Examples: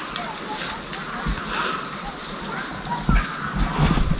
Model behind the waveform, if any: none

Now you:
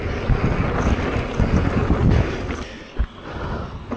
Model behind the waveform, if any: none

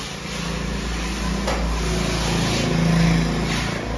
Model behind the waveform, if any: none